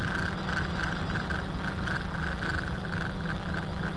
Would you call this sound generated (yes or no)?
no